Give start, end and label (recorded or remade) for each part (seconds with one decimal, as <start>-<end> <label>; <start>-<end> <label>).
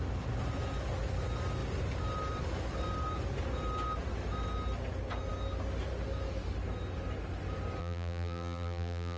0.0-7.8 recorded; 7.8-9.2 remade